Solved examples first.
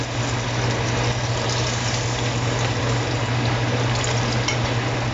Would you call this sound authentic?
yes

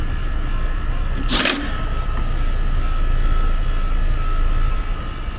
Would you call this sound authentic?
yes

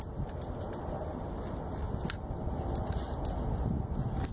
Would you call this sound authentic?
yes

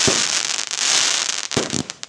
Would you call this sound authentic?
yes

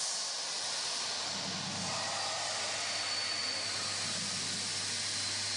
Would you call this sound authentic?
yes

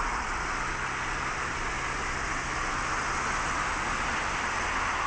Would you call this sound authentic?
yes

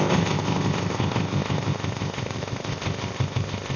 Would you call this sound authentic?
no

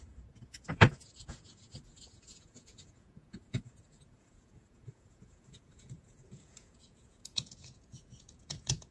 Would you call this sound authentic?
no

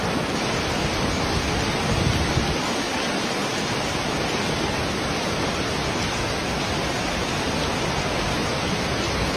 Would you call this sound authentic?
yes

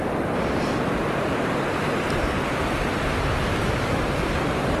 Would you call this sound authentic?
yes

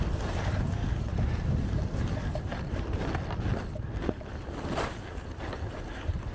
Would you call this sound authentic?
yes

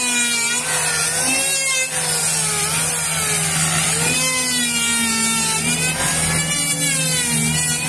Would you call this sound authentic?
yes